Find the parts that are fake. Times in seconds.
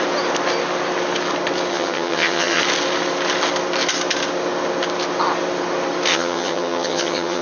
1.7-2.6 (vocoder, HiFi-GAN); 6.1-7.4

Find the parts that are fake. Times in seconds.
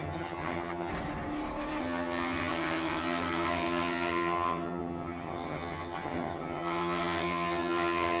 0.0-0.9 (vocoder, HiFi-GAN); 1.8-8.2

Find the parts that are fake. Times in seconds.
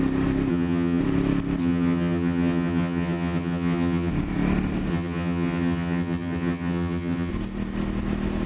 0.5-1.0 (vocoder, HiFi-GAN); 1.6-4.1; 4.9-7.3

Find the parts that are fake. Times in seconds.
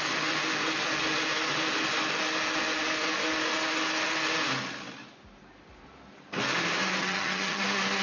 7.0-7.6 (vocoder, HiFi-GAN)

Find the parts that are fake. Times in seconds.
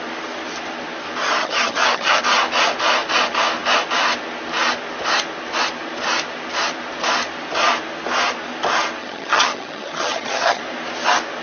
1.4-2.2 (vocoder, HiFi-GAN); 9.0-10.6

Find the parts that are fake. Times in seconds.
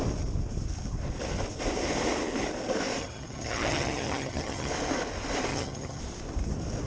3.0-4.7 (vocoder, HiFi-GAN); 5.5-6.0